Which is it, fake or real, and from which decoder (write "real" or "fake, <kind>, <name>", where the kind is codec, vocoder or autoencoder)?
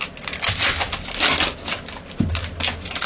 real